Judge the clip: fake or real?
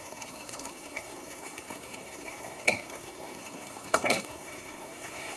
fake